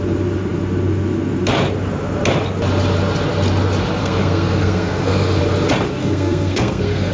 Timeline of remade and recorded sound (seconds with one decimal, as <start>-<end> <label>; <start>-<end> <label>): 0.0-4.0 recorded; 4.0-5.4 remade; 5.4-6.0 recorded; 6.0-7.1 remade